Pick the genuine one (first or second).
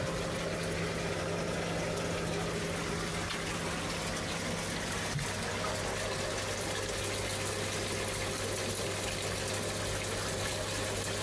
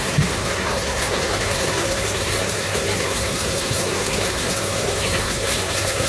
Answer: first